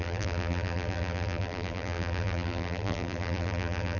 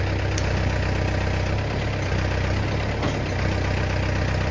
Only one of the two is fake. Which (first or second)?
first